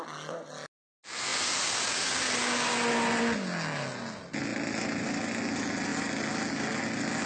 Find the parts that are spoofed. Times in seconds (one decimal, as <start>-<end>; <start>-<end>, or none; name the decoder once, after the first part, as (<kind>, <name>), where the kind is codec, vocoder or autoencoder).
none